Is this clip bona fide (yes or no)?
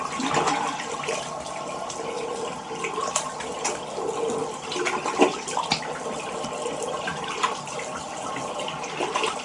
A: yes